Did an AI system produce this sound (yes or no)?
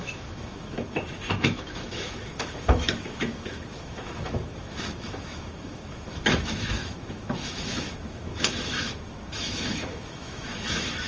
yes